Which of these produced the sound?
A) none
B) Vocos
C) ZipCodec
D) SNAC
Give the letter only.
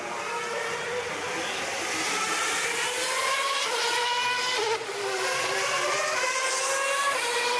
A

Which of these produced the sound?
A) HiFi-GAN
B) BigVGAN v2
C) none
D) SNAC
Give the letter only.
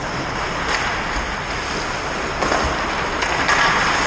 C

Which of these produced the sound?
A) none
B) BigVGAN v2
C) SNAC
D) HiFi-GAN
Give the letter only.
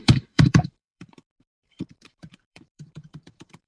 B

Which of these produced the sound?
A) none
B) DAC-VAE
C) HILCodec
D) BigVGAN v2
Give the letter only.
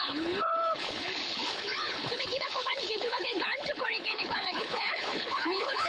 C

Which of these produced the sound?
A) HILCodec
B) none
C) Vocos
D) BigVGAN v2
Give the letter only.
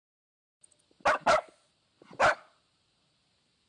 B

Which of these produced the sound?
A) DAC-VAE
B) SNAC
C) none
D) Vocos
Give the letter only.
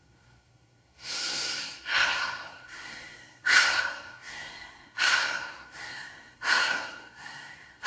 B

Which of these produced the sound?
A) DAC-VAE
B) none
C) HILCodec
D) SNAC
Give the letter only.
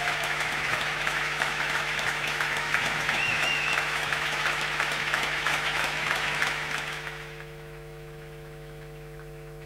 A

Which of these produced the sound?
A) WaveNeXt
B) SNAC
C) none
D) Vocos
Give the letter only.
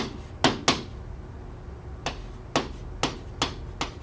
C